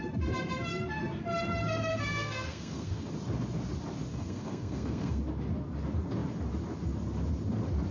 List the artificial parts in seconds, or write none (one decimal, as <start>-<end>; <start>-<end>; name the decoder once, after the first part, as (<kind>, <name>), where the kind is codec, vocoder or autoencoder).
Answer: 1.9-3.1 (codec, SNAC); 4.1-5.2